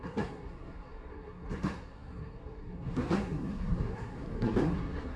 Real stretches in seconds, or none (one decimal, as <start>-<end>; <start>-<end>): none